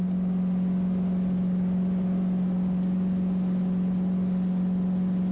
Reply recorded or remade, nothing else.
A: recorded